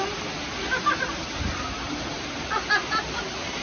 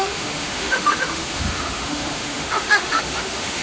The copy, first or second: second